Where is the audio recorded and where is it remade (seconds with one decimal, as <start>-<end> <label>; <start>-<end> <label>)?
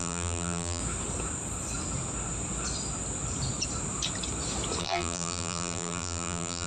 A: 0.0-0.8 remade; 0.8-4.8 recorded; 4.8-6.7 remade